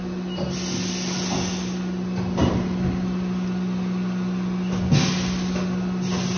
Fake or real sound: real